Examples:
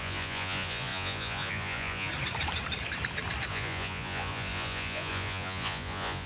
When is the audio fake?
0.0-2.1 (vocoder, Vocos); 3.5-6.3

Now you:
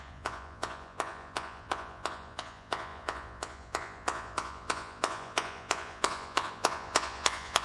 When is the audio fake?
0.0-7.6 (vocoder, Vocos)

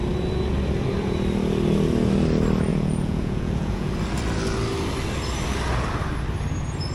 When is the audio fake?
2.7-3.9 (vocoder, Vocos)

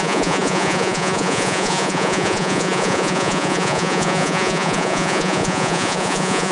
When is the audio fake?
0.0-6.5 (vocoder, Vocos)